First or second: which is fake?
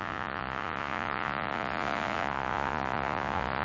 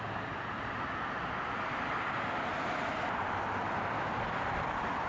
first